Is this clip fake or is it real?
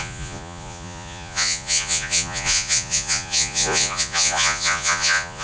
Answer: fake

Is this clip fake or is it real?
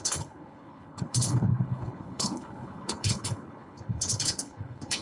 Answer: fake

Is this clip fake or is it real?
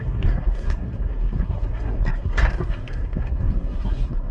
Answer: fake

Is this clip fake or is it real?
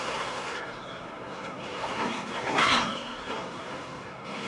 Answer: fake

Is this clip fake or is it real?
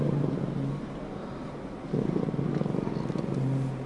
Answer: real